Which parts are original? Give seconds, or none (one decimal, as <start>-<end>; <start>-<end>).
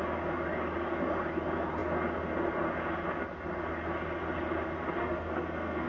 0.0-5.0